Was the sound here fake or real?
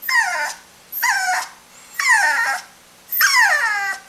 real